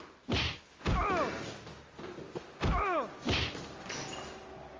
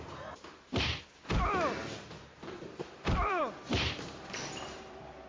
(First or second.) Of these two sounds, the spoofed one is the second